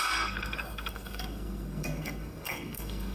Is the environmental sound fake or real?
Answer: fake